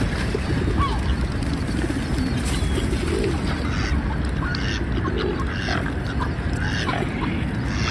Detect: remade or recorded recorded